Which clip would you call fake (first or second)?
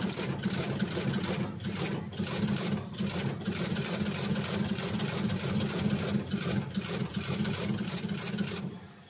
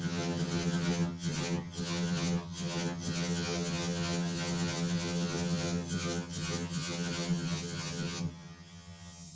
second